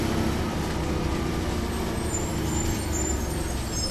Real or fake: real